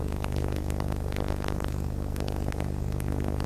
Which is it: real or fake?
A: fake